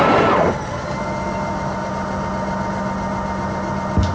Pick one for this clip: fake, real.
real